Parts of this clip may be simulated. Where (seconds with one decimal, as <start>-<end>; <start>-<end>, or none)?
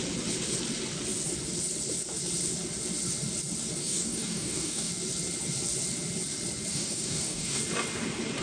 3.8-4.9; 6.7-7.6